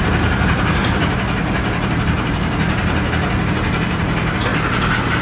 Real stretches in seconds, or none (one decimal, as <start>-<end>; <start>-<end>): 0.0-5.2